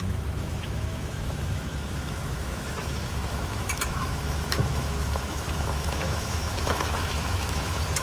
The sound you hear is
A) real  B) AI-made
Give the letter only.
B